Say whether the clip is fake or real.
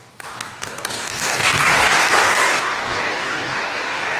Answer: fake